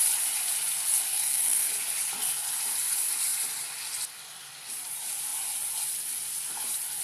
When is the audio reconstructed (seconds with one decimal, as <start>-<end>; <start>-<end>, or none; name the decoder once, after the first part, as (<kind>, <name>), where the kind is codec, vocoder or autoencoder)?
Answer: 1.1-1.7 (codec, SNAC)